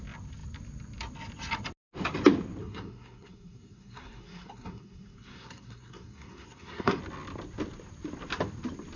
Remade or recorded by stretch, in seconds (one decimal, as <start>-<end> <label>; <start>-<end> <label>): 0.0-2.6 recorded; 2.6-7.0 remade; 7.0-9.0 recorded